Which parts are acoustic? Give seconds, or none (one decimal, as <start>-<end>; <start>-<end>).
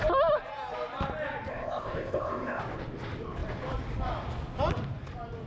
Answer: 0.0-1.5; 2.6-5.5